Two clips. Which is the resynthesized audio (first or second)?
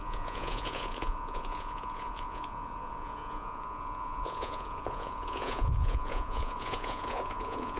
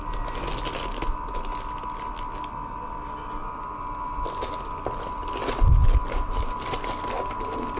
first